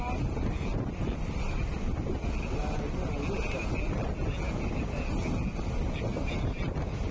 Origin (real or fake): real